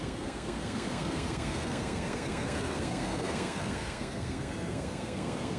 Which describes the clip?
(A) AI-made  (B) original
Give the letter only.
A